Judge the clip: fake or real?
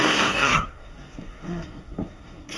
fake